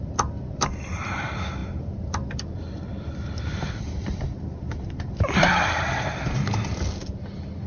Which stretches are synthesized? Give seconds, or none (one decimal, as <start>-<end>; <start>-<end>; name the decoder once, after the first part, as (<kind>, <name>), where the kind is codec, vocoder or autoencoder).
0.0-7.7 (vocoder, BigVGAN v2)